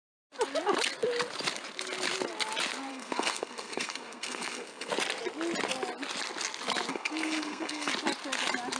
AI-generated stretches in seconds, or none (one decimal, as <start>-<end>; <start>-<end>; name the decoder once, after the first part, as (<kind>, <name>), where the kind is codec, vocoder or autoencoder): 2.9-4.9 (codec, SNAC); 6.9-7.9

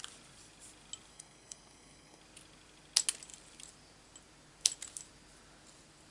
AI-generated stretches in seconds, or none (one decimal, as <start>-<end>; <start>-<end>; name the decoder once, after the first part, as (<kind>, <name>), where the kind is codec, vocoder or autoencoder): 1.1-2.2 (codec, SNAC)

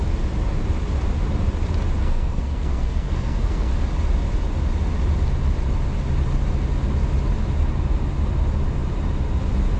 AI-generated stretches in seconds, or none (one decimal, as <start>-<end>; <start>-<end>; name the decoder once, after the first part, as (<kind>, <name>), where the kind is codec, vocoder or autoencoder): 2.0-3.7 (codec, SNAC)

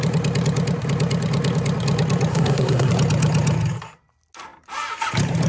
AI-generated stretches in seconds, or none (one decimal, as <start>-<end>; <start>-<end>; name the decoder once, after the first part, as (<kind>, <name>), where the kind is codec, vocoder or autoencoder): 2.3-2.9 (codec, SNAC)

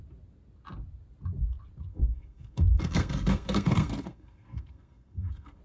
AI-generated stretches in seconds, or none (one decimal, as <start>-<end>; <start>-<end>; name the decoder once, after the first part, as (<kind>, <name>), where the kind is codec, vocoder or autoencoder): 1.9-5.6 (codec, SNAC)

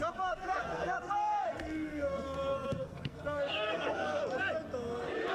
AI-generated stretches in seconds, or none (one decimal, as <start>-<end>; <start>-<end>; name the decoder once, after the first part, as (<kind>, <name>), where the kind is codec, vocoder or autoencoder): 0.0-4.2 (codec, SNAC)